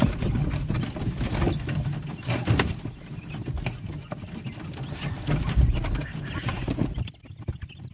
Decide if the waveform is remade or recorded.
recorded